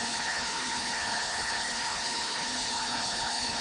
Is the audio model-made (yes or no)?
yes